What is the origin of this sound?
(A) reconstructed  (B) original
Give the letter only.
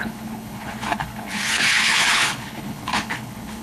A